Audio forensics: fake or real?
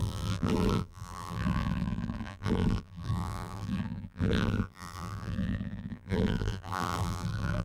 fake